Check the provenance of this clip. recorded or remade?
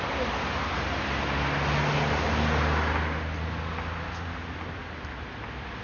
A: recorded